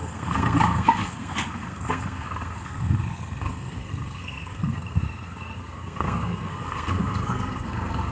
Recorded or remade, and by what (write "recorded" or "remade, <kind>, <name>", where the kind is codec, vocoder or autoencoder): remade, codec, SNAC